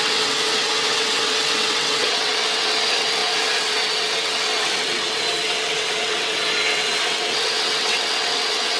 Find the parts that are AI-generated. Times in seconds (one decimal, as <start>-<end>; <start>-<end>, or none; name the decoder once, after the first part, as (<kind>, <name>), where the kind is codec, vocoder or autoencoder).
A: 0.0-8.8 (vocoder, WaveNeXt)